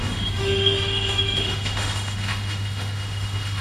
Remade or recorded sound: remade